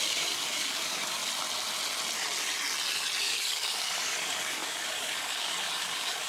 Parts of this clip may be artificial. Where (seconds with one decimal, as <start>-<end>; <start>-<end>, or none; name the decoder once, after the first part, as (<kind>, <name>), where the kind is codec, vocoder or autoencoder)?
0.0-1.2 (codec, DAC); 3.2-6.3